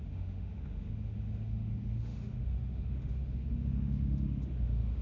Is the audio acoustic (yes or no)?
no